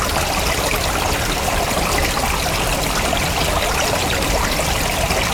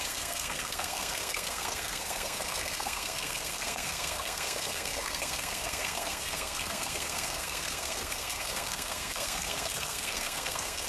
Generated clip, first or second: second